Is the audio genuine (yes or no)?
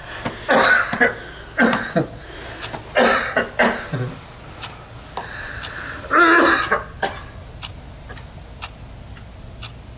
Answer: yes